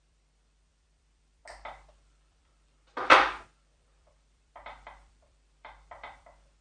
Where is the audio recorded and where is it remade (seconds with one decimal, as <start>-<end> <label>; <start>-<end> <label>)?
0.0-1.4 remade; 1.4-1.9 recorded; 1.9-6.6 remade